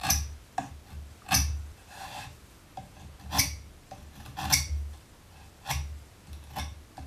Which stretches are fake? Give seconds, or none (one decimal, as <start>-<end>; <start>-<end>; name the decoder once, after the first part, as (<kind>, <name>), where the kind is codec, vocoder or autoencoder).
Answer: none